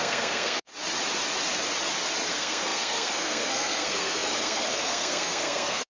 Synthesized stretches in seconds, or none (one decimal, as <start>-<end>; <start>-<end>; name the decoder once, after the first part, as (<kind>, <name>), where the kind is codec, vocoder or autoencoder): 0.0-0.7 (codec, SNAC); 2.3-5.9